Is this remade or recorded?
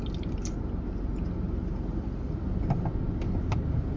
recorded